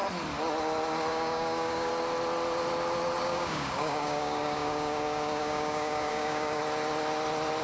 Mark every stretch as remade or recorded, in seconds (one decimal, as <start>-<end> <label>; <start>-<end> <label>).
0.0-1.1 recorded; 1.1-1.9 remade; 1.9-3.2 recorded; 3.2-6.6 remade; 6.6-7.6 recorded